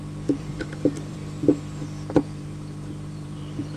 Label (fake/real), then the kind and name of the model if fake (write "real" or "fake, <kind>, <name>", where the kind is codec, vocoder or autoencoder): fake, vocoder, BigVGAN v2